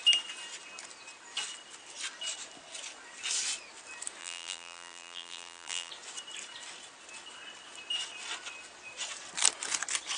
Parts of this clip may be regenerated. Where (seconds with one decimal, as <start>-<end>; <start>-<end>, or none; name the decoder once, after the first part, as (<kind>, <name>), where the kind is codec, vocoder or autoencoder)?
4.2-5.9 (vocoder, BigVGAN v2)